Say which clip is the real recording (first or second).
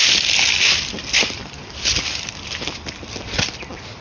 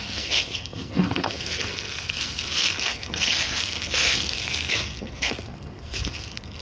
first